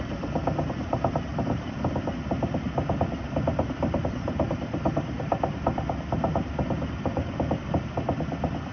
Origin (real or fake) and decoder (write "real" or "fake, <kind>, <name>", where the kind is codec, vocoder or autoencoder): real